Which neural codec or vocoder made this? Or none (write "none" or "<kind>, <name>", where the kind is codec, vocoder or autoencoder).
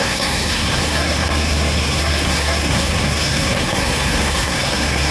codec, SNAC